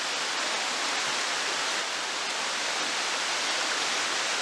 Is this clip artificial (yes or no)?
no